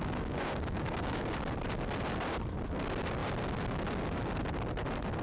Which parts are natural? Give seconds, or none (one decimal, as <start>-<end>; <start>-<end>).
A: 1.2-5.2